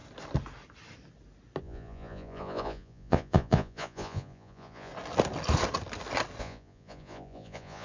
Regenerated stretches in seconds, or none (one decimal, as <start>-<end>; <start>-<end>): 1.6-4.9; 6.4-7.8